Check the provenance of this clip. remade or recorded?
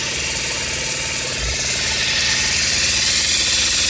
recorded